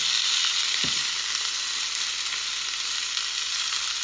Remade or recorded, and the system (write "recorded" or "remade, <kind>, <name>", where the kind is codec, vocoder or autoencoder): recorded